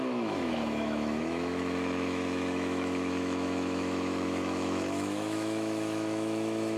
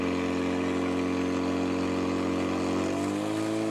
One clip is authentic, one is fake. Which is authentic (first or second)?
second